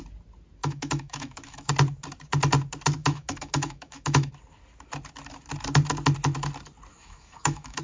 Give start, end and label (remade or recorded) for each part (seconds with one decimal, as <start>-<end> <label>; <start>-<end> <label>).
0.0-0.6 recorded; 0.6-1.7 remade; 1.7-3.0 recorded; 3.0-4.3 remade; 4.3-6.9 recorded; 6.9-7.8 remade